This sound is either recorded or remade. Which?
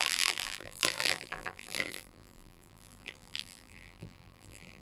remade